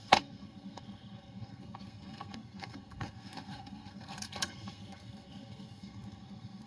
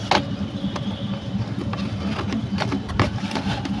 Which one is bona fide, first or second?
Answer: second